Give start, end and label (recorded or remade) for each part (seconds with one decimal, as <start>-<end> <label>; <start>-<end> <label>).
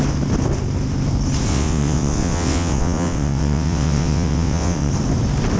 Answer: 0.0-1.5 recorded; 1.5-4.9 remade; 4.9-5.6 recorded